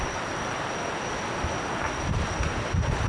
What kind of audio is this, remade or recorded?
recorded